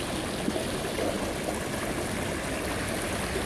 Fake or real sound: real